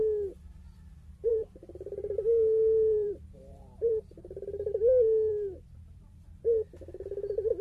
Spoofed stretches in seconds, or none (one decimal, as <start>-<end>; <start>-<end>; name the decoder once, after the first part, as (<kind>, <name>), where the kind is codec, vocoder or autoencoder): 1.3-4.1 (vocoder, BigVGAN v2); 5.3-6.4